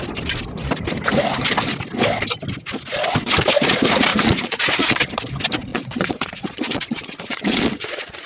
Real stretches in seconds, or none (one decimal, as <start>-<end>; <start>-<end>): 0.0-4.1; 5.0-5.7